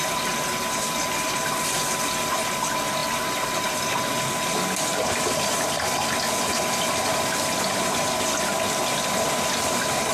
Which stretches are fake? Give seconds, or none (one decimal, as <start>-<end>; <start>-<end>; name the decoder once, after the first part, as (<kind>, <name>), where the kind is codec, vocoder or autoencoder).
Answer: none